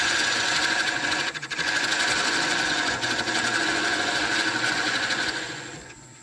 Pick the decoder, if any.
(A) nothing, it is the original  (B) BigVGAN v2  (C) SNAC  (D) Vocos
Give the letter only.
D